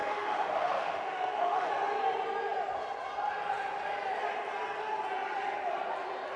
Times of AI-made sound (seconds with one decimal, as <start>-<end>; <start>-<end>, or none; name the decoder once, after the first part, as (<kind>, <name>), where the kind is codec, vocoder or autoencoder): 0.0-1.7 (autoencoder, DAC-VAE)